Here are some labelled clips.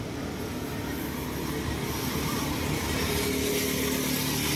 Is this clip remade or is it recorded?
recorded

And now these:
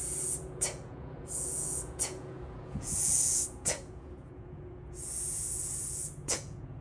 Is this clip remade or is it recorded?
remade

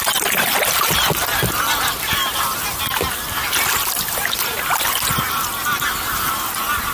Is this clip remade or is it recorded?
recorded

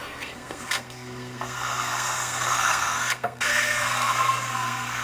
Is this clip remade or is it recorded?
remade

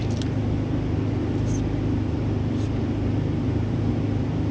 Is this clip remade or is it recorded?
recorded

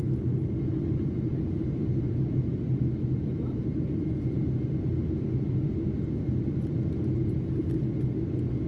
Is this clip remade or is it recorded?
recorded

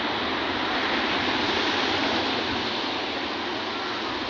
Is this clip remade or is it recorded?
recorded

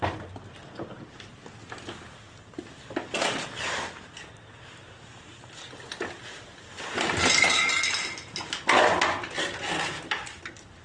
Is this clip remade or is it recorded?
recorded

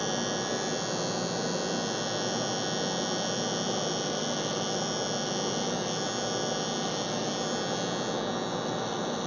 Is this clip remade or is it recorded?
recorded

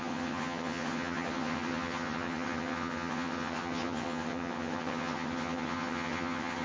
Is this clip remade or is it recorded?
remade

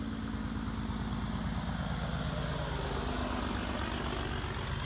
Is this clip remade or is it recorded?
recorded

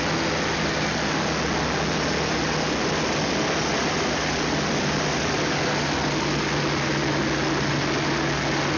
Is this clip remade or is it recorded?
recorded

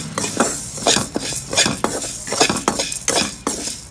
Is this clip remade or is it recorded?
recorded